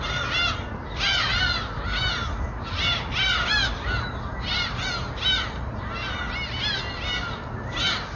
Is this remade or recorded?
recorded